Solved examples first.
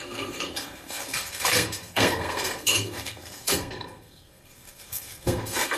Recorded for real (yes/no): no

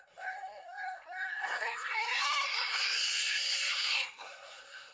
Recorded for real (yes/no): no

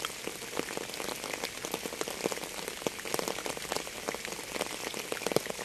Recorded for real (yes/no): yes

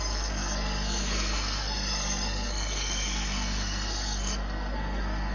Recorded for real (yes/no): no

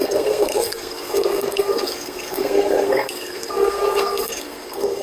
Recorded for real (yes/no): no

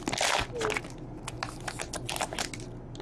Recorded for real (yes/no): yes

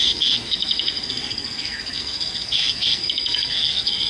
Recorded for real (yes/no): no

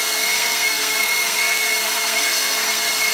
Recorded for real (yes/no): no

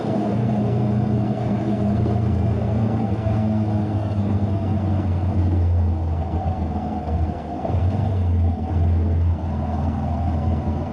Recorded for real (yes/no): no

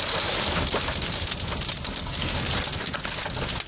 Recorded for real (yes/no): yes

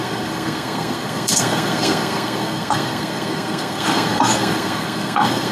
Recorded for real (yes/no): no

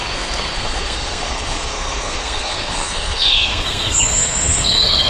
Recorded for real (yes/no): no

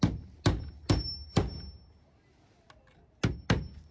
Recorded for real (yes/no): yes